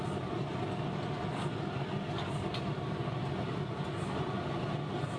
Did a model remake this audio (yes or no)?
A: no